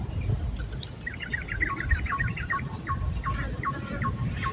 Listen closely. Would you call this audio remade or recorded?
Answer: recorded